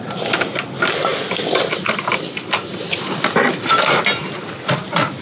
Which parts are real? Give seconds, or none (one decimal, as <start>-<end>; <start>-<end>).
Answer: 0.0-5.2